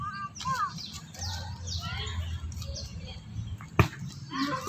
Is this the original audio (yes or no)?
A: yes